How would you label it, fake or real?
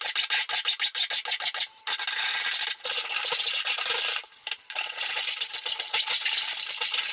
real